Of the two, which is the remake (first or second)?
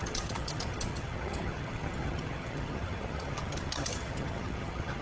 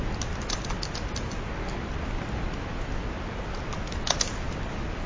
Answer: first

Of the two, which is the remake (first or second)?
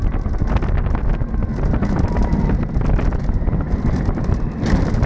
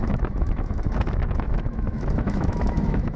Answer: second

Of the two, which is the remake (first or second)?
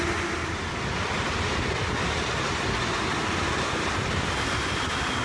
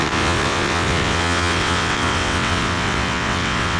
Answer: second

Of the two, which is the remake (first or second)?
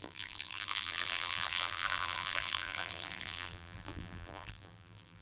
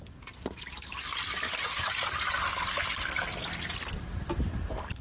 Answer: first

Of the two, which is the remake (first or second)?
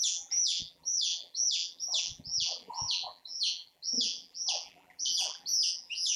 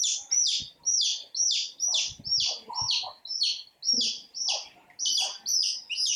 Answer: first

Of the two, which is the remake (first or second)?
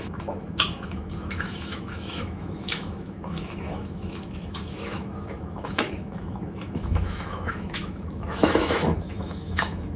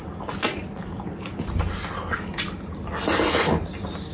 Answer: first